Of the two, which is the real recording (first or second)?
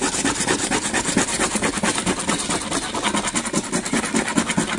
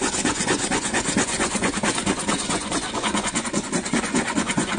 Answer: first